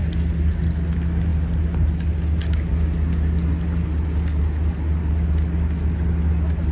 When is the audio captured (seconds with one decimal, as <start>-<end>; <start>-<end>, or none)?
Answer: 0.0-6.7